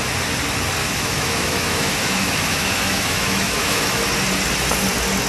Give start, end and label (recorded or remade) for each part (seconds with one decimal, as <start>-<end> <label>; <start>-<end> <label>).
0.0-0.8 recorded; 0.8-4.0 remade; 4.0-5.3 recorded